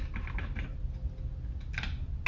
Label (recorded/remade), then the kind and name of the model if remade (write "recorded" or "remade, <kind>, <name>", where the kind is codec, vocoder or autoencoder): recorded